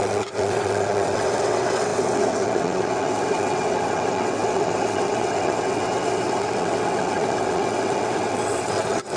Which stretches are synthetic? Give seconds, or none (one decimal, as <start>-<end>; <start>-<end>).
0.0-9.2